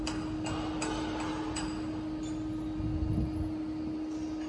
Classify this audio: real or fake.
real